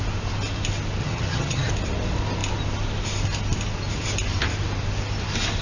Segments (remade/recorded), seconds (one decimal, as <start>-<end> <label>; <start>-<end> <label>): 0.0-1.0 recorded; 1.0-1.7 remade; 1.7-5.6 recorded